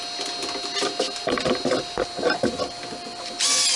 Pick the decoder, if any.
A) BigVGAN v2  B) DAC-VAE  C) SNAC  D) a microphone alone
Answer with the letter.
D